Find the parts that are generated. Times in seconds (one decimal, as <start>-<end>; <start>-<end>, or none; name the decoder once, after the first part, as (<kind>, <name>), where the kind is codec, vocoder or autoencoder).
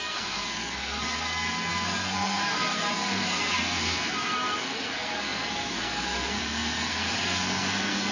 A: 0.0-8.1 (codec, SNAC)